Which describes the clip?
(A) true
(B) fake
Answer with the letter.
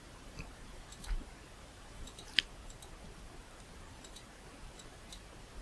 B